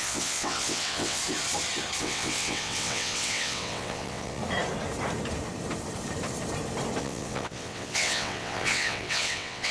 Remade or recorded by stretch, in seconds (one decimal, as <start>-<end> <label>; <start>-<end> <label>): 0.0-1.2 remade; 1.2-2.0 recorded; 2.0-4.4 remade; 4.4-7.0 recorded; 7.0-9.7 remade